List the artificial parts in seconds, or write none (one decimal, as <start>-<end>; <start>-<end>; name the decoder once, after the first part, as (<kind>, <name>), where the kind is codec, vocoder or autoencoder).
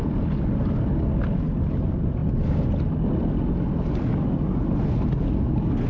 none